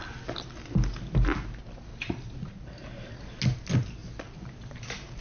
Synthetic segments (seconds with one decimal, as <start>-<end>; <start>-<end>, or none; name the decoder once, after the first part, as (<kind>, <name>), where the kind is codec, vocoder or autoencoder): 1.9-3.1 (vocoder, BigVGAN v2); 4.0-5.2